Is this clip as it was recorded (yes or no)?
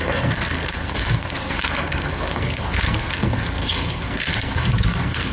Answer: no